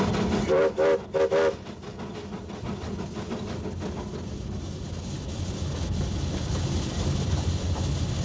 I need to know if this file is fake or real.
real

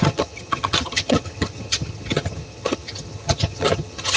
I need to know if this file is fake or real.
fake